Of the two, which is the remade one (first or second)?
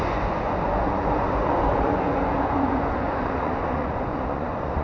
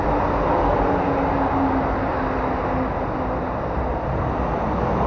first